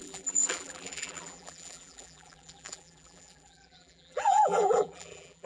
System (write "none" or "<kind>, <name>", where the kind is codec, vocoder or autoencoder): vocoder, BigVGAN v2